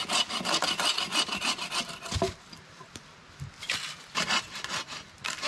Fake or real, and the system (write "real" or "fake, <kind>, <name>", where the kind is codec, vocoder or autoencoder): fake, vocoder, BigVGAN v2